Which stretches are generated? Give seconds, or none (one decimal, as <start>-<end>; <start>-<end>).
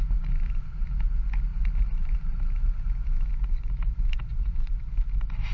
1.5-2.9